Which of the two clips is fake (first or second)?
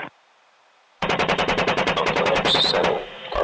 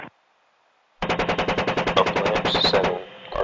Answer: first